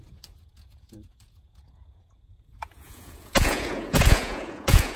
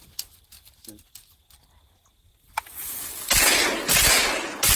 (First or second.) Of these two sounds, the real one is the second